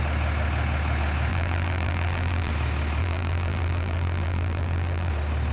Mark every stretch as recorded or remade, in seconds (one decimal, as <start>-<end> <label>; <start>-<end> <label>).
0.0-1.3 recorded; 1.3-2.5 remade; 2.5-3.0 recorded; 3.0-5.1 remade; 5.1-5.5 recorded